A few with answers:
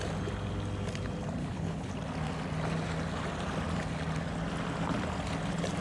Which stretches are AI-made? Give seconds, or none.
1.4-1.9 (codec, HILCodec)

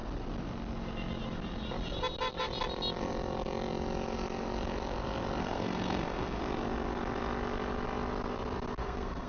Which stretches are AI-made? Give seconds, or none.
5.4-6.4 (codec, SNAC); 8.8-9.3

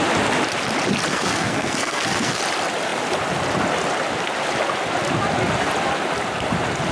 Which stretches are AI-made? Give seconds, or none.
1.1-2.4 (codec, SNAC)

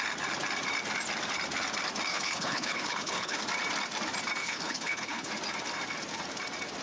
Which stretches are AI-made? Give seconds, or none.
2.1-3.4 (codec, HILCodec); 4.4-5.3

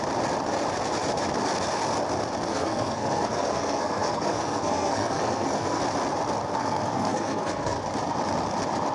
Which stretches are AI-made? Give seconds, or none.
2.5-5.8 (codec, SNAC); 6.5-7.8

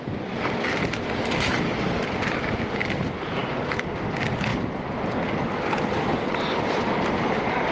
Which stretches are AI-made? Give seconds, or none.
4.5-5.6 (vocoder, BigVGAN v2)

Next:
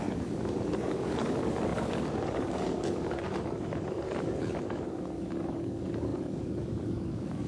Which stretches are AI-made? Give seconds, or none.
0.0-7.5 (codec, DAC)

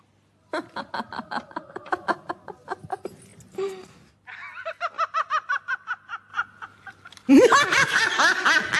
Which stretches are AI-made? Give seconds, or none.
6.3-7.3 (vocoder, BigVGAN v2)